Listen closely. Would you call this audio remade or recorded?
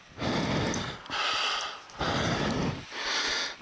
recorded